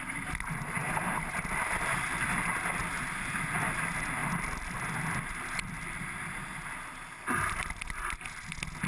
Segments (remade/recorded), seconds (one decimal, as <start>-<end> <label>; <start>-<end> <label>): 0.0-0.8 recorded; 0.8-2.3 remade; 2.3-2.8 recorded; 2.8-3.6 remade; 3.6-4.2 recorded; 4.2-6.6 remade; 6.6-8.9 recorded